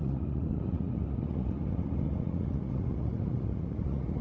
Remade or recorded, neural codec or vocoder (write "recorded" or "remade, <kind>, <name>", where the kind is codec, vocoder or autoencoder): remade, vocoder, Vocos